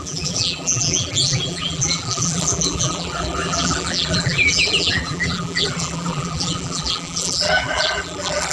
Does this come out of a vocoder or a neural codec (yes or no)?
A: yes